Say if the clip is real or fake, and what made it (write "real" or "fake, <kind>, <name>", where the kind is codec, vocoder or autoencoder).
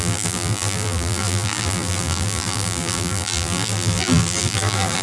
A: fake, vocoder, BigVGAN v2